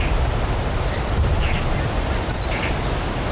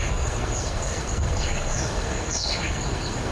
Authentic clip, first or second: first